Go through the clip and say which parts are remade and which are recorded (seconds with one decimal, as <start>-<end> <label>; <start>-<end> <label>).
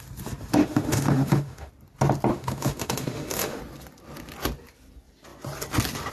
0.0-0.6 recorded; 0.6-1.7 remade; 1.7-2.3 recorded; 2.3-3.6 remade; 3.6-6.1 recorded